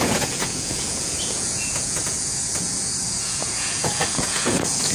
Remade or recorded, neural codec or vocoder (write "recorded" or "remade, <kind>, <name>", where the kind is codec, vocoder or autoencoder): remade, vocoder, Vocos